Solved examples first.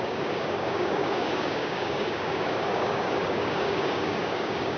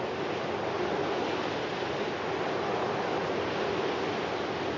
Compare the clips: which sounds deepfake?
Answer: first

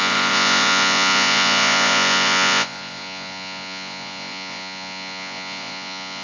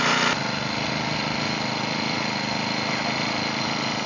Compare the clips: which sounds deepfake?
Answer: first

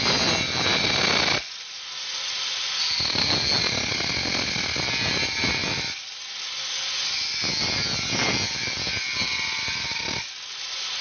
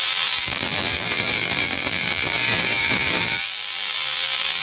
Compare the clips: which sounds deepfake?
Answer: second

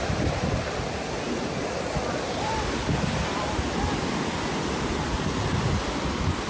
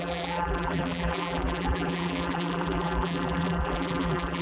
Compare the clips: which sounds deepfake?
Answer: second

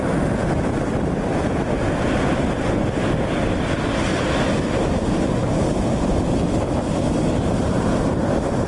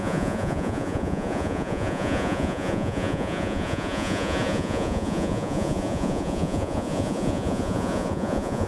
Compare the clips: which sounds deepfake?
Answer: second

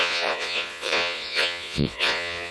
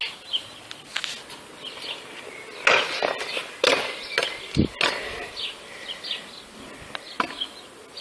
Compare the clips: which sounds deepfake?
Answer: first